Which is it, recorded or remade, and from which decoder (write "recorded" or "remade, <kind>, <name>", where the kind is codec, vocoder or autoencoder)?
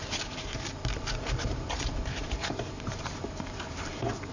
remade, vocoder, BigVGAN v2